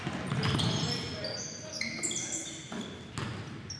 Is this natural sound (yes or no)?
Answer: yes